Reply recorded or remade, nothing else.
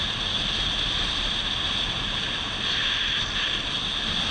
recorded